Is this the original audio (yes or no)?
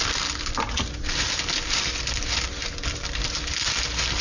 yes